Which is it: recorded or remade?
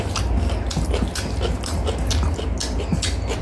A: recorded